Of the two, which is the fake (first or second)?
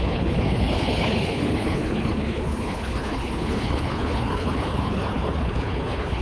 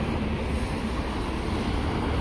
first